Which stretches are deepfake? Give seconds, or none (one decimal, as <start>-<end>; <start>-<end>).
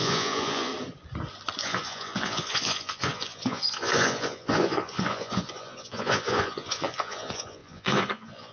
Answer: 0.0-0.7; 1.6-8.5